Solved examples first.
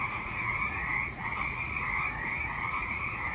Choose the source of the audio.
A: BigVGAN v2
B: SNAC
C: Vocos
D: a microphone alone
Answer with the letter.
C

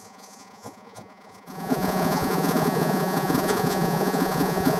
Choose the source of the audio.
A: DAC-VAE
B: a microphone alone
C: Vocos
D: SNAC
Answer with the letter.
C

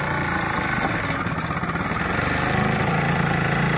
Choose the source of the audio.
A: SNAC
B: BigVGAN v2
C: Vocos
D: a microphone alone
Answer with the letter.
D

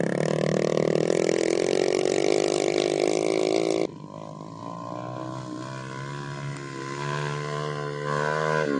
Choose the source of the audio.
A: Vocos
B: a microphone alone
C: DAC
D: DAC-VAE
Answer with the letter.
B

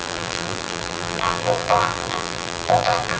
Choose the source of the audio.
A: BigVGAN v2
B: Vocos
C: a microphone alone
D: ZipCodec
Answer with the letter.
A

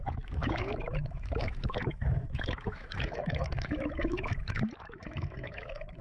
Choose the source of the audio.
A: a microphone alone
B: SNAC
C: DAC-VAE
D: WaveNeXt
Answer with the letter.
C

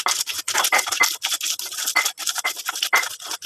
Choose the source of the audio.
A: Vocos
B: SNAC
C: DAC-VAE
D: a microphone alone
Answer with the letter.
D